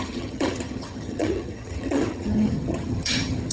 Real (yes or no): no